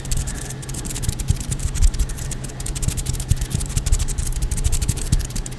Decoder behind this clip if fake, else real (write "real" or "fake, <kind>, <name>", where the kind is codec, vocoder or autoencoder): fake, vocoder, BigVGAN v2